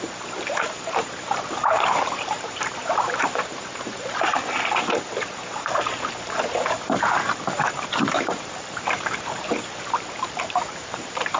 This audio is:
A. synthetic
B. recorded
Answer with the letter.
A